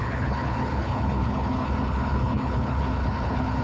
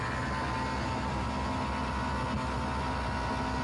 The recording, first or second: second